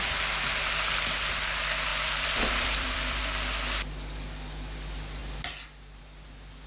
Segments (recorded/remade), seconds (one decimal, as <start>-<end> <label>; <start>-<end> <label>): 0.0-1.9 recorded; 1.9-3.2 remade; 3.2-6.7 recorded